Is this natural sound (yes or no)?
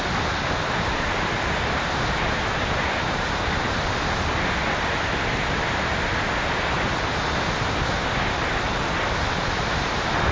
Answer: yes